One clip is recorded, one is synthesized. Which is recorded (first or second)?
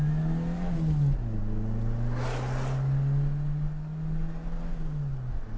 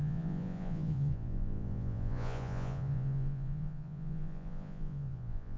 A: first